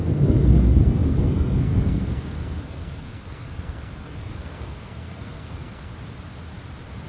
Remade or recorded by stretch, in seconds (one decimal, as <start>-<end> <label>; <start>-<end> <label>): 0.0-5.9 remade; 5.9-7.1 recorded